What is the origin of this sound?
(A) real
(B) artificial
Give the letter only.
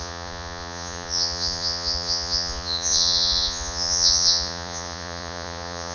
B